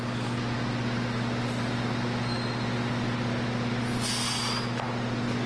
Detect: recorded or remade recorded